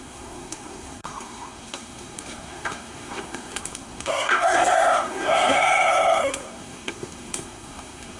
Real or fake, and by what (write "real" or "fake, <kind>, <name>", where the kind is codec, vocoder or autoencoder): fake, codec, SNAC